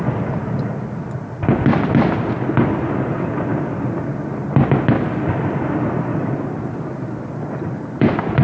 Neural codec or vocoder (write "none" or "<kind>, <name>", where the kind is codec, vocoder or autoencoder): none